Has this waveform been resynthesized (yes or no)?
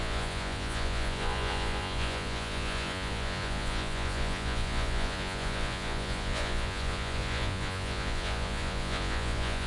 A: yes